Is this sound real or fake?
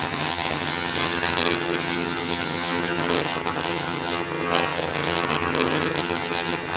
fake